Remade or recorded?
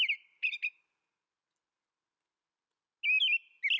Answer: recorded